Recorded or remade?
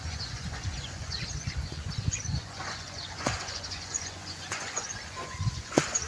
remade